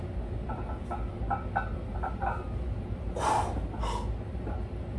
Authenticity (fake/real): real